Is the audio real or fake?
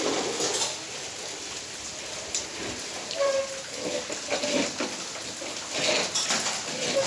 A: real